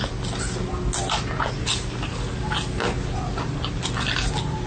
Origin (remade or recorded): recorded